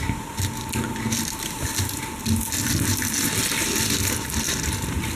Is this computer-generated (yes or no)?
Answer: no